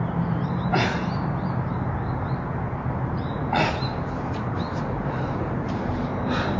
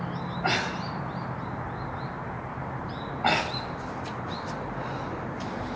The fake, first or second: first